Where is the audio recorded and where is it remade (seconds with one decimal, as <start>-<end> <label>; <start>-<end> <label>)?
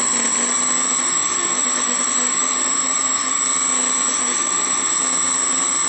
0.0-1.0 recorded; 1.0-3.4 remade; 3.4-4.1 recorded; 4.1-4.9 remade; 4.9-5.9 recorded